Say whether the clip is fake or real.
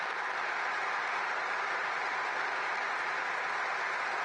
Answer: real